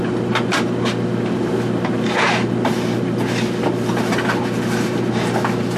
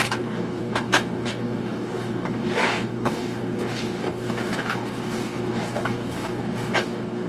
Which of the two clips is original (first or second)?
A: first